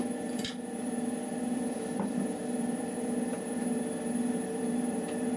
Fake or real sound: fake